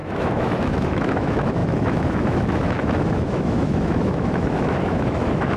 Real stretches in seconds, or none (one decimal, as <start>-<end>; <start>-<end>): none